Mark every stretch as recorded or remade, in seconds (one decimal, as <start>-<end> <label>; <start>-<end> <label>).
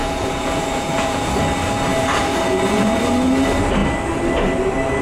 0.0-1.3 remade; 1.3-1.9 recorded; 1.9-3.0 remade; 3.0-5.0 recorded